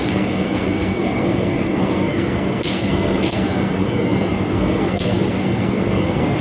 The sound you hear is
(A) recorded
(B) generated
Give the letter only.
B